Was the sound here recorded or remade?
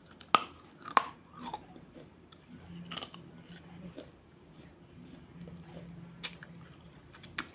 recorded